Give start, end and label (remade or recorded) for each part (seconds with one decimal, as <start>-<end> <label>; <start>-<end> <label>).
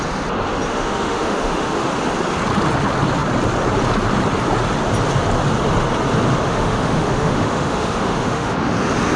0.0-0.7 recorded; 0.7-1.9 remade; 1.9-6.5 recorded; 6.5-8.7 remade; 8.7-9.2 recorded